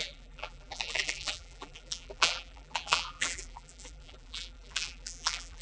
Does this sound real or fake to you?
fake